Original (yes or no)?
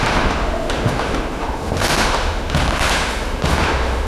no